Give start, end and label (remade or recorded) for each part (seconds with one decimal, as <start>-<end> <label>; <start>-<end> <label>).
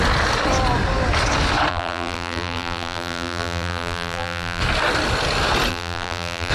0.0-1.7 recorded; 1.7-4.6 remade; 4.6-5.7 recorded; 5.7-6.5 remade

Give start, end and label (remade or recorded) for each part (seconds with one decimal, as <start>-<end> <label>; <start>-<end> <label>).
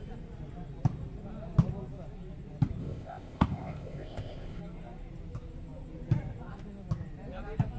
0.0-2.8 recorded; 2.8-4.6 remade; 4.6-7.8 recorded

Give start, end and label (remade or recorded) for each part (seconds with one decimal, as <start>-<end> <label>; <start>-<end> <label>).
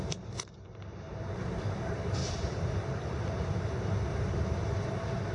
0.0-5.3 remade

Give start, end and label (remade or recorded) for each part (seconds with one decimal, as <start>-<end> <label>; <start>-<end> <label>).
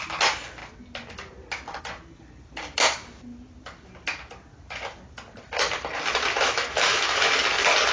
0.0-6.3 recorded; 6.3-7.4 remade; 7.4-7.9 recorded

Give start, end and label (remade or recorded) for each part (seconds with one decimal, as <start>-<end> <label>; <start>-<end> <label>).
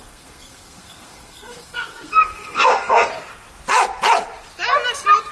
0.0-3.1 remade; 3.1-5.3 recorded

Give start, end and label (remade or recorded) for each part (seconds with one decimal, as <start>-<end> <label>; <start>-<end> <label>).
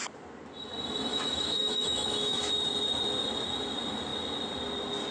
0.0-1.1 recorded; 1.1-2.5 remade; 2.5-5.1 recorded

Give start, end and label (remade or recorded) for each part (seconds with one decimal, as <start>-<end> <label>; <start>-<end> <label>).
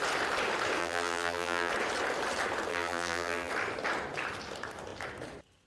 0.0-0.8 recorded; 0.8-1.7 remade; 1.7-2.7 recorded; 2.7-3.5 remade; 3.5-5.7 recorded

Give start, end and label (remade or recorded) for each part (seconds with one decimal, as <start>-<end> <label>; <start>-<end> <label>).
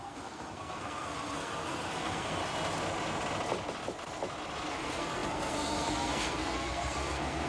0.0-2.4 remade; 2.4-4.7 recorded; 4.7-7.5 remade